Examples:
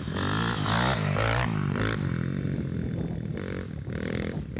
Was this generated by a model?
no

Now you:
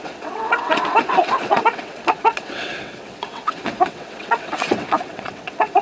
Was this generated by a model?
yes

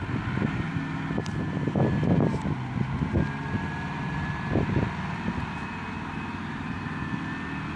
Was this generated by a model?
no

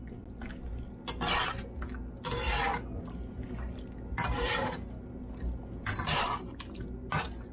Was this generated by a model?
no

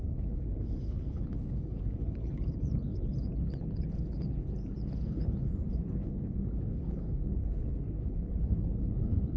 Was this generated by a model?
yes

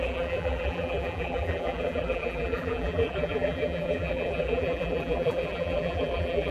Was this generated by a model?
yes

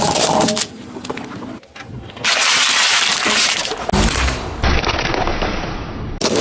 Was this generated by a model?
no